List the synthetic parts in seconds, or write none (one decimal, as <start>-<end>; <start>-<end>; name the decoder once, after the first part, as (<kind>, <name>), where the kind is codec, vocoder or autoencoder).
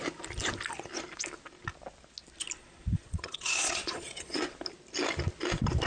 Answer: 2.6-4.4 (vocoder, Vocos)